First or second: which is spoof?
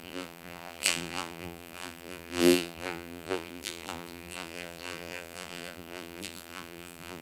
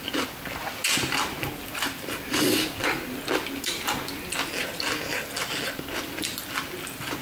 first